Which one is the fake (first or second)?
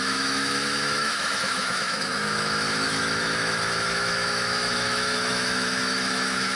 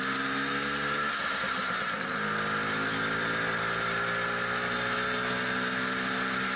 first